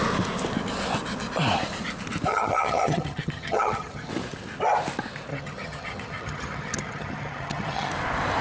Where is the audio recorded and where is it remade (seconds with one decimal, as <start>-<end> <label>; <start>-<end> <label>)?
0.0-2.3 recorded; 2.3-4.1 remade; 4.1-5.3 recorded; 5.3-7.9 remade; 7.9-8.4 recorded